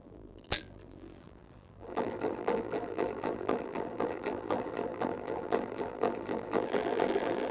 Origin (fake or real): fake